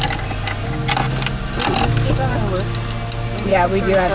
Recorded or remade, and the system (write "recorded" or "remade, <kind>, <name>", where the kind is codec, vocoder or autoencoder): recorded